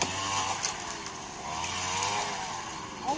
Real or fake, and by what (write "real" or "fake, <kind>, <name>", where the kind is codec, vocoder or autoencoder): real